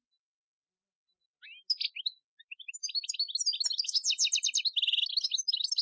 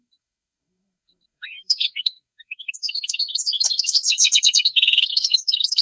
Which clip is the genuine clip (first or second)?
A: first